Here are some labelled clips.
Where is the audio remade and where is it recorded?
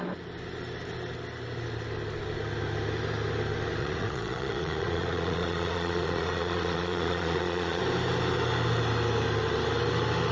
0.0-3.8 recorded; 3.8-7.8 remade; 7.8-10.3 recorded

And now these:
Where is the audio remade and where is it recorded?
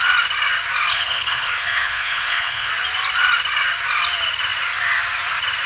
0.0-0.9 recorded; 0.9-2.7 remade; 2.7-5.7 recorded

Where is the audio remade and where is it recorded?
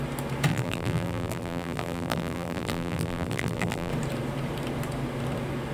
0.0-0.5 recorded; 0.5-3.9 remade; 3.9-5.7 recorded